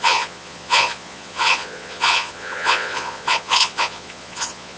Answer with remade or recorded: remade